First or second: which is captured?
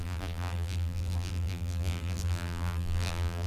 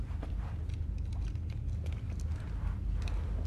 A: second